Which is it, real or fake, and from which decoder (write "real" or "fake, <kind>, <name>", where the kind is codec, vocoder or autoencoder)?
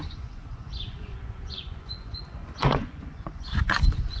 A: fake, vocoder, Vocos